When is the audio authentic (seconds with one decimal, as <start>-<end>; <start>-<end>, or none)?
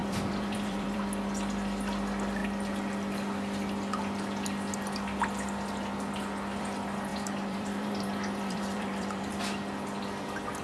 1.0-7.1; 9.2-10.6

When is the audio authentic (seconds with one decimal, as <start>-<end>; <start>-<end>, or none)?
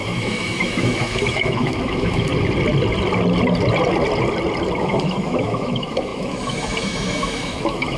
2.3-4.8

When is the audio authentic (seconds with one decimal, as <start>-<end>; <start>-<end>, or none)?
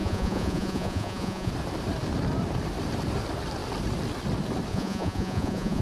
1.5-4.7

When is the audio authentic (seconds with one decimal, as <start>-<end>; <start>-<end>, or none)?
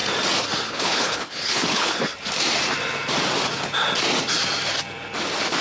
0.0-0.7; 1.9-5.6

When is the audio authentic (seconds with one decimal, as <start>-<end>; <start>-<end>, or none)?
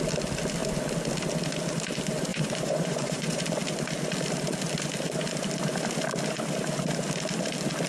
0.0-2.3; 3.4-7.9